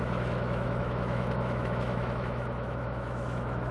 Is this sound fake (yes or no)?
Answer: yes